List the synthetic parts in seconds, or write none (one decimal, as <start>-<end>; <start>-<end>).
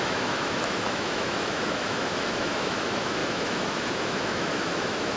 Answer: 0.0-5.2